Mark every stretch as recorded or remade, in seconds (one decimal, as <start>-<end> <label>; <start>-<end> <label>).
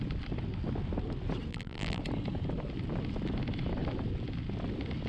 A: 0.0-1.5 recorded; 1.5-2.0 remade; 2.0-5.1 recorded